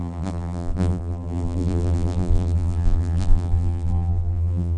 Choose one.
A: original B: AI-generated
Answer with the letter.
B